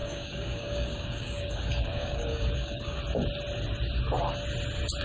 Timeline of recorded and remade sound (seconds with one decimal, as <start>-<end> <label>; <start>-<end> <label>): 0.0-3.0 remade; 3.0-5.0 recorded